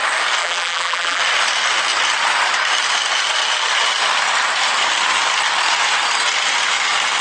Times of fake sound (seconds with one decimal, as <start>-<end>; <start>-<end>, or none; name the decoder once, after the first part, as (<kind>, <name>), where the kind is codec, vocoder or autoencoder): 0.4-1.2 (vocoder, BigVGAN v2)